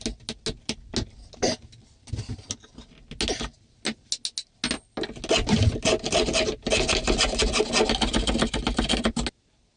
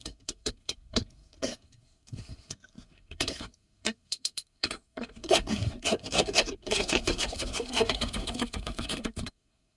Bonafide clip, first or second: first